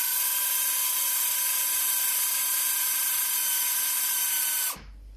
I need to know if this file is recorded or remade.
recorded